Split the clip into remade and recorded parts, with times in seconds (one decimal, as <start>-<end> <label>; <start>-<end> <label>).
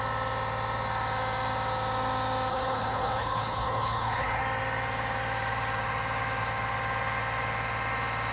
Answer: 0.0-2.5 recorded; 2.5-4.4 remade; 4.4-8.3 recorded